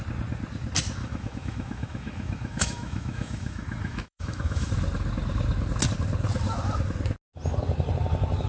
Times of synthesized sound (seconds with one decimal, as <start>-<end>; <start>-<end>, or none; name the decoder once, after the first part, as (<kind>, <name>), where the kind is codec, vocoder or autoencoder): 1.0-4.7 (autoencoder, DAC-VAE)